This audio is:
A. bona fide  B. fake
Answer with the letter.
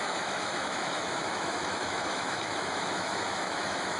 B